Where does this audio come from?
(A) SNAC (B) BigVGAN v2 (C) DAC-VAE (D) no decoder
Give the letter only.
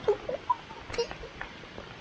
D